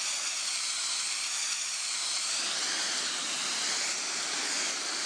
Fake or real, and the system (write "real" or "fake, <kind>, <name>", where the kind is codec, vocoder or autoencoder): real